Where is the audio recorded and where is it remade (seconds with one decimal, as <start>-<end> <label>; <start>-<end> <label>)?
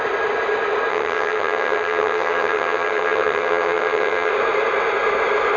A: 0.0-0.9 recorded; 0.9-4.3 remade; 4.3-5.6 recorded